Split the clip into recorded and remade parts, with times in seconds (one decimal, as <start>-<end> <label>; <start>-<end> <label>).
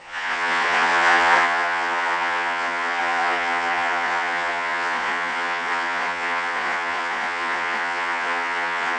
0.0-9.0 remade